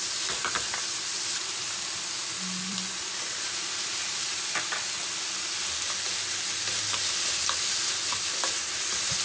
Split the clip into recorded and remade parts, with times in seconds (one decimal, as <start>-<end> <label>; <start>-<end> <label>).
0.0-2.7 recorded; 2.7-3.3 remade; 3.3-9.2 recorded